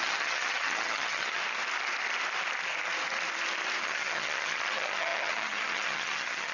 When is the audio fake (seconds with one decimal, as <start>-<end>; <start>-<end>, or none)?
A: 0.0-1.4; 3.8-6.5